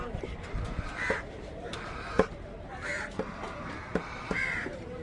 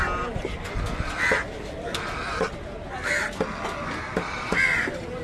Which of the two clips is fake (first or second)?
first